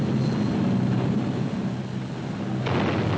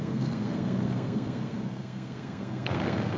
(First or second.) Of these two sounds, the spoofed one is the second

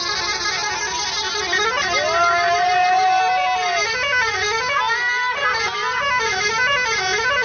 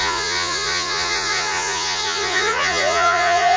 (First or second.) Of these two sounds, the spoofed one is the second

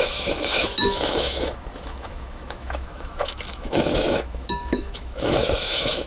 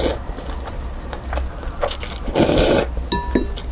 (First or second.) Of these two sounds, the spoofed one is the first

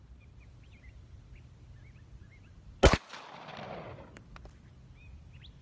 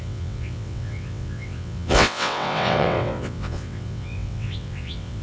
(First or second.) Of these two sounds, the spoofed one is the second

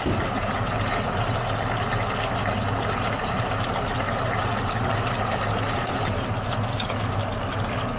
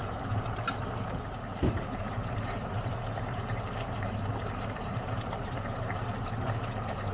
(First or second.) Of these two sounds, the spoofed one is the second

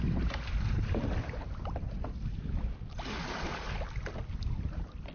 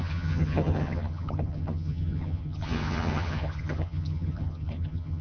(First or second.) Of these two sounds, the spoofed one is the second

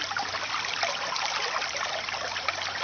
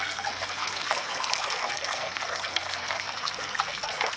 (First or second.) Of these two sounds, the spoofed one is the second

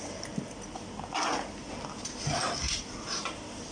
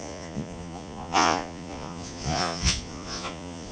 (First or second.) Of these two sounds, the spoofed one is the second